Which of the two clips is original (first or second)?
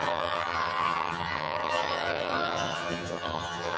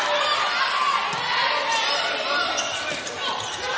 second